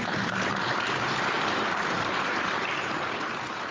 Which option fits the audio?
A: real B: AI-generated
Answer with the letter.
B